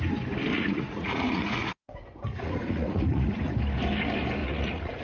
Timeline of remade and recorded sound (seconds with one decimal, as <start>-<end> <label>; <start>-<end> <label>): 0.0-0.5 recorded; 0.5-3.5 remade; 3.5-4.4 recorded; 4.4-5.0 remade